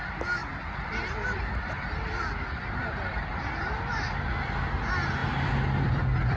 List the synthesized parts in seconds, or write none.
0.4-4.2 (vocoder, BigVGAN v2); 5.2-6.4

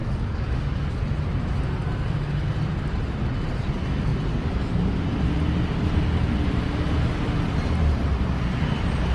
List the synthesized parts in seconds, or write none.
0.0-0.9 (codec, DAC)

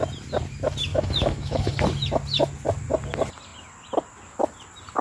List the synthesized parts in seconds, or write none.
0.9-1.7 (autoencoder, DAC-VAE)